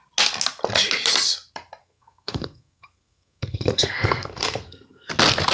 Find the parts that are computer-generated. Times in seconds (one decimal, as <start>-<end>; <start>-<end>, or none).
1.8-5.1